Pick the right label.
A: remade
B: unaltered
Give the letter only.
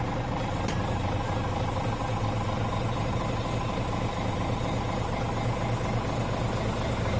B